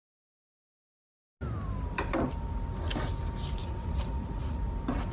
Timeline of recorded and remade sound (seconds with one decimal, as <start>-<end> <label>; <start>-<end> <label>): 0.0-3.6 recorded; 3.6-4.6 remade; 4.6-5.1 recorded